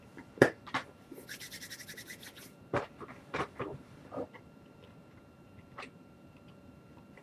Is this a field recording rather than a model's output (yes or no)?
no